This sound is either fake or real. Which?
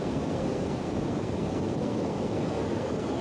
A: fake